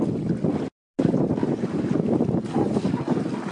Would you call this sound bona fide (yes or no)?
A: yes